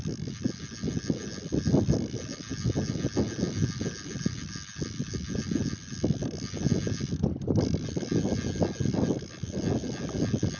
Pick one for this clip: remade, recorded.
recorded